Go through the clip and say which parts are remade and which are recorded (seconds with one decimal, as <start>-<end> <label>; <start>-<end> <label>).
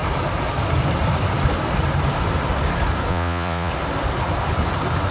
0.0-3.1 recorded; 3.1-3.7 remade; 3.7-5.1 recorded